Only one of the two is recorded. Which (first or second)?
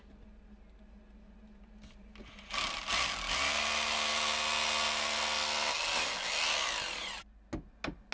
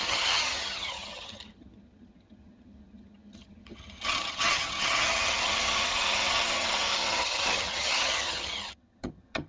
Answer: first